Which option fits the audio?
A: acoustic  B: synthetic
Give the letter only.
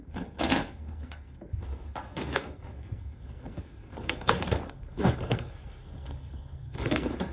B